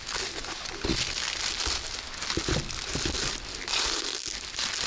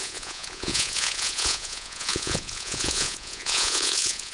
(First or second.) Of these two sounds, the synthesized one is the second